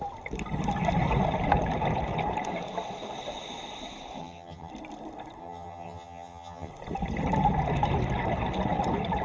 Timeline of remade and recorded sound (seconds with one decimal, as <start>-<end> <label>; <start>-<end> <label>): 0.0-4.2 recorded; 4.2-4.7 remade; 4.7-5.4 recorded; 5.4-6.7 remade; 6.7-9.2 recorded